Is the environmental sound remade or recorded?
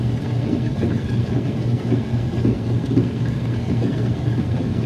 remade